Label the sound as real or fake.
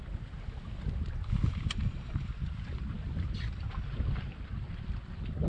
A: real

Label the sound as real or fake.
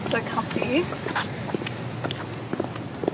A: real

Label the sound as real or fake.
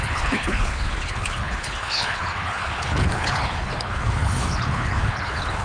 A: fake